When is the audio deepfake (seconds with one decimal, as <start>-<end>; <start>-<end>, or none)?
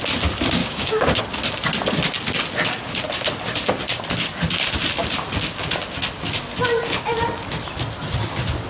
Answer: 0.6-1.2